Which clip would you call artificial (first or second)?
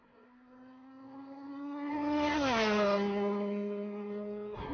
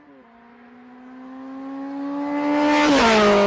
first